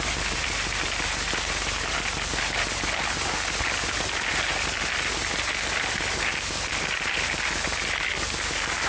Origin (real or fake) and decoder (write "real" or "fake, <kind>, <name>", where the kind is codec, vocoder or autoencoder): real